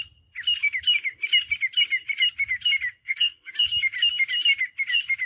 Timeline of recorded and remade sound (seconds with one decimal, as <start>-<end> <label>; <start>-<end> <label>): 0.0-3.0 recorded; 3.0-3.5 remade; 3.5-5.3 recorded